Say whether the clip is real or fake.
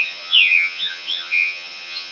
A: fake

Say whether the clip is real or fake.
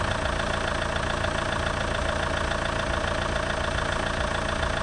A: real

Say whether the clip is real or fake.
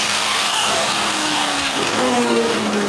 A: fake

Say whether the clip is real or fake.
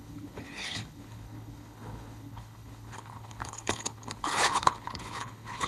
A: fake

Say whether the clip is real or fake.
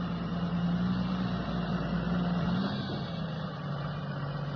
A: real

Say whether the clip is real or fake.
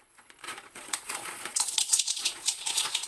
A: fake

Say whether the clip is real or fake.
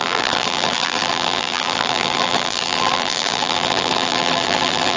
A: fake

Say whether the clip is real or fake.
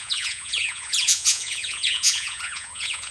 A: fake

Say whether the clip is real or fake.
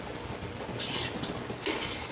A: real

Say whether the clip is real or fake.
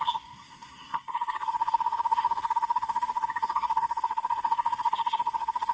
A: fake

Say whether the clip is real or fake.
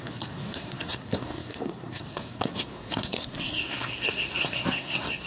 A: fake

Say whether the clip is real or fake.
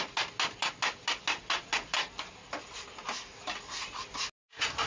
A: real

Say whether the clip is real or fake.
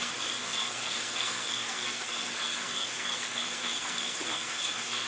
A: fake